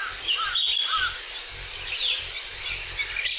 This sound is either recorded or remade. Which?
recorded